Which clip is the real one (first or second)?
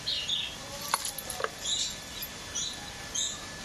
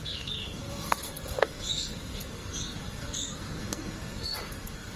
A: first